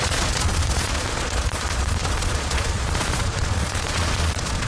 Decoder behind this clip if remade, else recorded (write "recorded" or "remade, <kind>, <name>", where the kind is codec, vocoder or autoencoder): remade, vocoder, Vocos